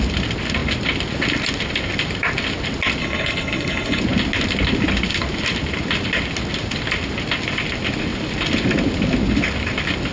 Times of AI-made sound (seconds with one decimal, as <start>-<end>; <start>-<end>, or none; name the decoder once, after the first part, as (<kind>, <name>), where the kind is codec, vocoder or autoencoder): 3.0-4.0 (codec, HILCodec)